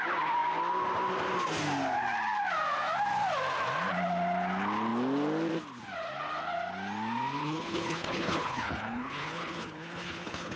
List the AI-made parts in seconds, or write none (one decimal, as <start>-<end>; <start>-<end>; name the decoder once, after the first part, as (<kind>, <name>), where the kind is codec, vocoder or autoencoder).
7.4-10.6 (codec, HILCodec)